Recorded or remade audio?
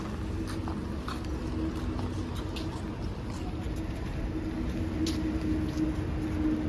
recorded